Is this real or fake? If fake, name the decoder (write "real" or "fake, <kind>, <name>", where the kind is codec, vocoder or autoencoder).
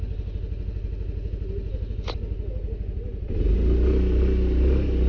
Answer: real